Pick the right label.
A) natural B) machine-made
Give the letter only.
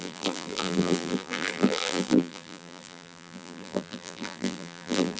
B